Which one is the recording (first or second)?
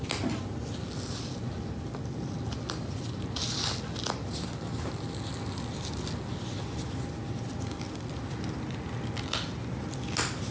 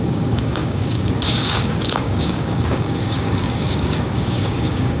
first